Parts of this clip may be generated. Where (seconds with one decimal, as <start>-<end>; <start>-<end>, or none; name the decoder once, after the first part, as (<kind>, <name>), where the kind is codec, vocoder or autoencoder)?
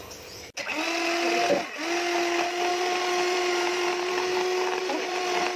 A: 2.7-4.1 (vocoder, BigVGAN v2); 4.8-5.6